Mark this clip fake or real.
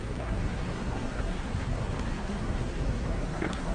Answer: fake